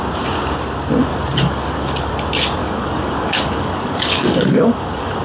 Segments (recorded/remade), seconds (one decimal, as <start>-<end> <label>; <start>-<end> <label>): 0.0-1.1 recorded; 1.1-2.1 remade; 2.1-2.6 recorded; 2.6-5.2 remade